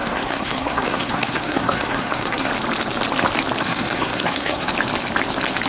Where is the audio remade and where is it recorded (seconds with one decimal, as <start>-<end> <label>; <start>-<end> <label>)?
0.0-2.5 remade; 2.5-3.6 recorded; 3.6-4.7 remade; 4.7-5.7 recorded